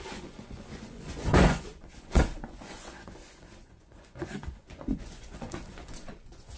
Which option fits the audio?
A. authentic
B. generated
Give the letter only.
B